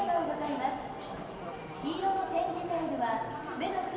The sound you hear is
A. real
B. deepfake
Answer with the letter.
A